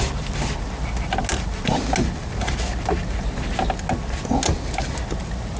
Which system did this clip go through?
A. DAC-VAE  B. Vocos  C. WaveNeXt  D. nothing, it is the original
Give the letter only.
D